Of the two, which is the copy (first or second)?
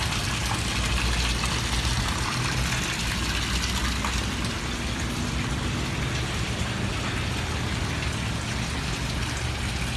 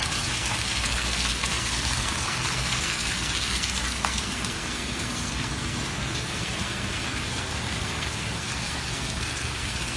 second